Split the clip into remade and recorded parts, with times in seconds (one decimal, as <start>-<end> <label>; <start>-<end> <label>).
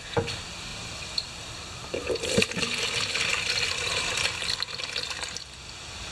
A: 0.0-0.7 recorded; 0.7-2.5 remade; 2.5-3.3 recorded; 3.3-4.4 remade; 4.4-6.1 recorded